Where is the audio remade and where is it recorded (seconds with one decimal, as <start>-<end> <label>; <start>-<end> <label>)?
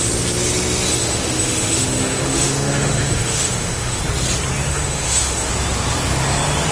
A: 0.0-0.9 recorded; 0.9-4.0 remade; 4.0-4.7 recorded; 4.7-5.5 remade; 5.5-6.7 recorded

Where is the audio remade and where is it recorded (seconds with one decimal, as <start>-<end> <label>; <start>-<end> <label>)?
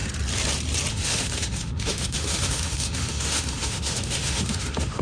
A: 0.0-0.9 recorded; 0.9-5.0 remade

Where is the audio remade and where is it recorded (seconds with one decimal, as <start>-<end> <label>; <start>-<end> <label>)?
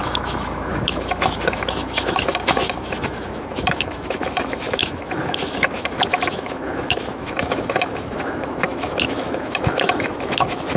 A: 0.0-10.8 remade